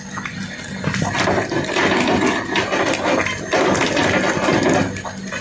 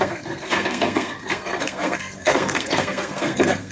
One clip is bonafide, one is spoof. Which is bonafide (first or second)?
first